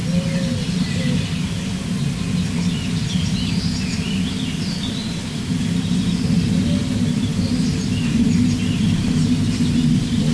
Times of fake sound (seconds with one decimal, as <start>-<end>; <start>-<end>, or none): 4.3-7.3; 8.1-10.3